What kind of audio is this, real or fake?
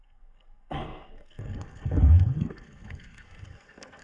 fake